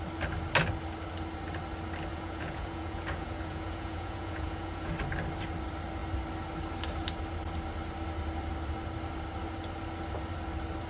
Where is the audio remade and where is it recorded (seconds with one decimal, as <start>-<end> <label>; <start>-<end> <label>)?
0.0-2.1 recorded; 2.1-4.9 remade; 4.9-10.9 recorded